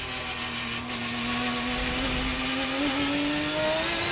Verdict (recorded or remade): recorded